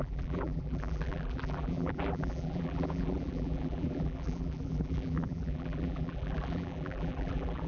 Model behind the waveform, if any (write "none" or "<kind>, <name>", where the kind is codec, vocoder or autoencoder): vocoder, BigVGAN v2